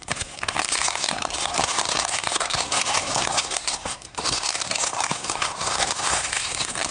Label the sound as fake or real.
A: fake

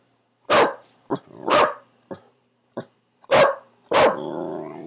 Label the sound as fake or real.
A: fake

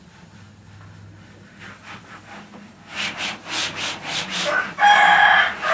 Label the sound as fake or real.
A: real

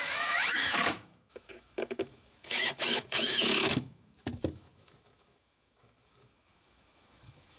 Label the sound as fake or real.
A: fake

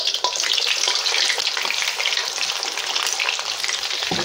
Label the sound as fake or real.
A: real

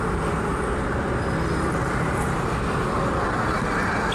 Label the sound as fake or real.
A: real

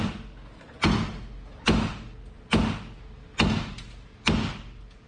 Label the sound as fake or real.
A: real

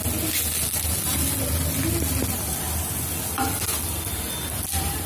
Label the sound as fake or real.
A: real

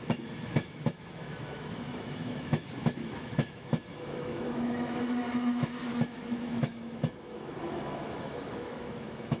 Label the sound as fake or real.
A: fake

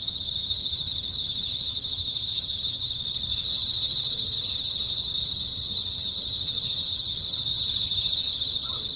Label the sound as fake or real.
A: fake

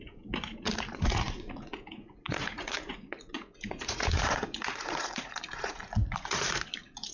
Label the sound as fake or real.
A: fake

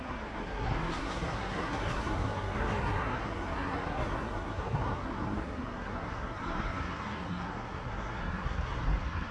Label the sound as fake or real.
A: fake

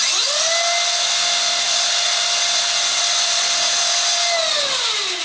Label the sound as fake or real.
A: real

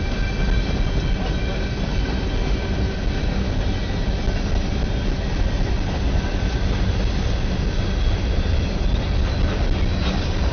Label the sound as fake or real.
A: real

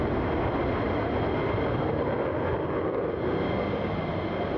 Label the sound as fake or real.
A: real